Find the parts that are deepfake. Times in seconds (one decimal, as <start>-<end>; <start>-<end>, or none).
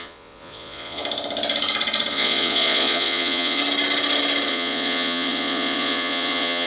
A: 0.0-1.0; 2.1-3.6; 4.5-6.7